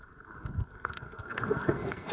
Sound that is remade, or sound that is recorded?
remade